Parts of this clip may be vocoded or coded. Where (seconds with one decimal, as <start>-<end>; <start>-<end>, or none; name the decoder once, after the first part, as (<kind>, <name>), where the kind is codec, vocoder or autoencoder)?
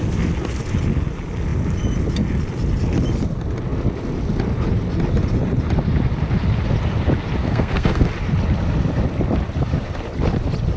7.4-8.1 (codec, SNAC)